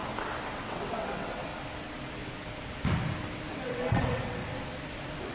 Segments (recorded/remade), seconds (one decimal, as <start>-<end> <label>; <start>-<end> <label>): 0.0-0.5 recorded; 0.5-1.5 remade; 1.5-3.5 recorded; 3.5-4.4 remade; 4.4-5.3 recorded